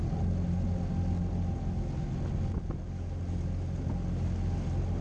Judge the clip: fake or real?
real